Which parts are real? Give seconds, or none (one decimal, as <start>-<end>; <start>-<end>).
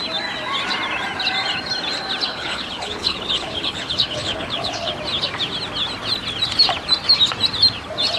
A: 0.0-2.3; 4.9-8.2